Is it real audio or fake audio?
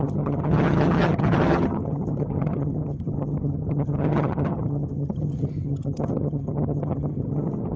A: fake